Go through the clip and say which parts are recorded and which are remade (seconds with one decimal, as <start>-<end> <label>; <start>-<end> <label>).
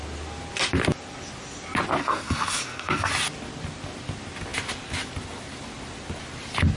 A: 0.0-2.0 recorded; 2.0-3.1 remade; 3.1-6.8 recorded